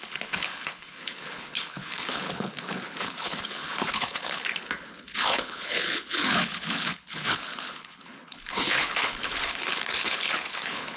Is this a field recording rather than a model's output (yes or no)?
no